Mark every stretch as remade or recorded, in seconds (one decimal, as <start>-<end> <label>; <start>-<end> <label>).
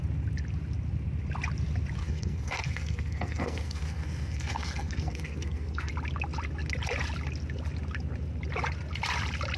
0.0-2.0 recorded; 2.0-5.9 remade; 5.9-9.6 recorded